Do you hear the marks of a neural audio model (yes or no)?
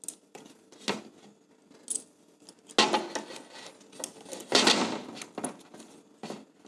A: no